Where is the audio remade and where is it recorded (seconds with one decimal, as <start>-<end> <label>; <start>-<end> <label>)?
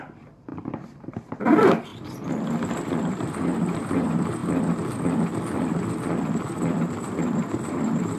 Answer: 0.0-1.9 remade; 1.9-3.0 recorded; 3.0-4.4 remade; 4.4-6.8 recorded; 6.8-8.2 remade